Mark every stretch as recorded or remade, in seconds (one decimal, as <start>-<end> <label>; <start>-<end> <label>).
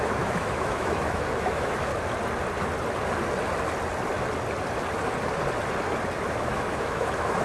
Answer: 0.0-1.9 remade; 1.9-6.3 recorded; 6.3-7.4 remade